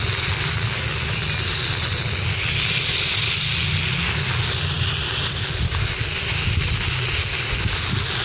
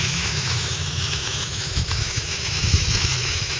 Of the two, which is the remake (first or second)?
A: second